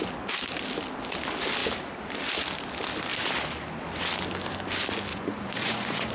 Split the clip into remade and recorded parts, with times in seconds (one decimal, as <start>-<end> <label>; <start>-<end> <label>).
0.0-5.1 recorded; 5.1-6.1 remade